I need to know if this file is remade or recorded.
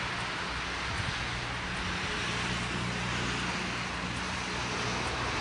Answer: recorded